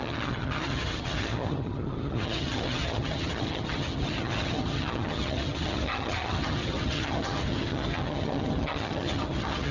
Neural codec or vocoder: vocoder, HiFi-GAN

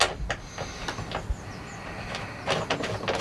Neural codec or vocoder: none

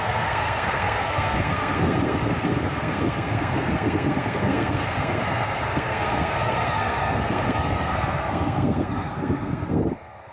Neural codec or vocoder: codec, SNAC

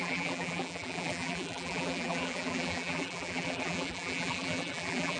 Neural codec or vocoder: vocoder, BigVGAN v2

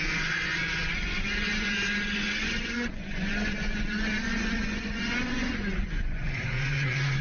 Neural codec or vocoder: vocoder, Vocos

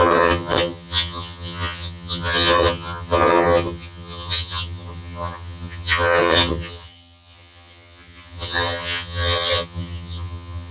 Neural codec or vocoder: vocoder, HiFi-GAN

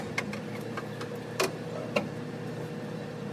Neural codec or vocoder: none